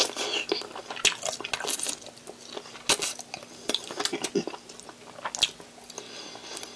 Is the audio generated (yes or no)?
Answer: no